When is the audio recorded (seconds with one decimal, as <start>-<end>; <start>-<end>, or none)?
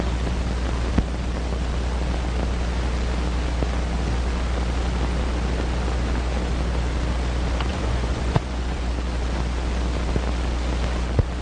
0.0-7.7; 8.9-11.4